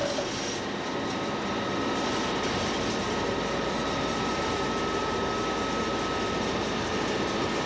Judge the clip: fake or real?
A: real